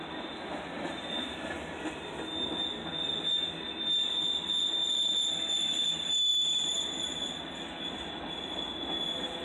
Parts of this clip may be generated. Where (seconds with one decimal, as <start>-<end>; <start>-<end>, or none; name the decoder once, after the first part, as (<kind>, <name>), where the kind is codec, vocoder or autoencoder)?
none